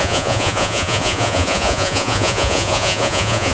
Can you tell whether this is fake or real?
fake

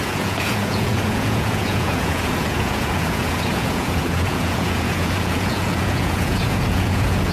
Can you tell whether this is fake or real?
fake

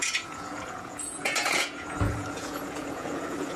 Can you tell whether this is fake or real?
fake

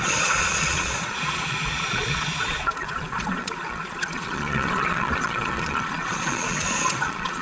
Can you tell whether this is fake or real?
fake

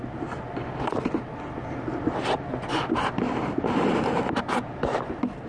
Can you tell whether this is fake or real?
real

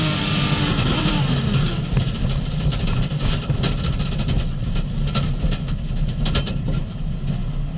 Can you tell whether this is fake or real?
real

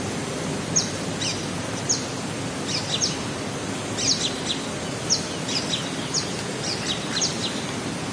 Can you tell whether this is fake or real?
real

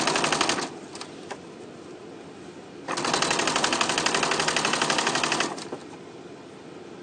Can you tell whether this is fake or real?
real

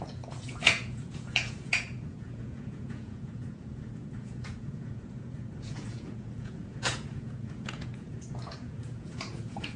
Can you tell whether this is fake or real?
fake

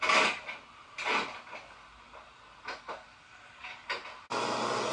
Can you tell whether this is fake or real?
real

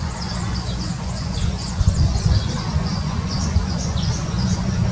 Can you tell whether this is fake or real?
fake